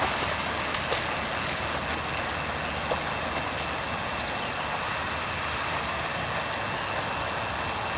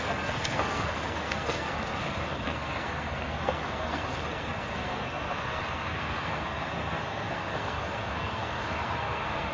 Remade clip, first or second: second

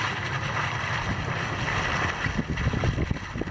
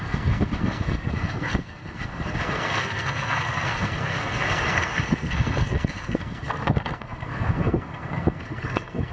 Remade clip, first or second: second